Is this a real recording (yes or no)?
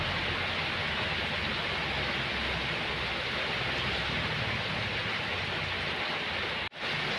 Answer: yes